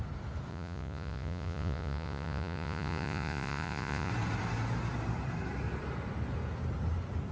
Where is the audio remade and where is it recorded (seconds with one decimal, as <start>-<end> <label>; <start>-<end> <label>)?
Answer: 0.0-0.5 recorded; 0.5-4.1 remade; 4.1-7.3 recorded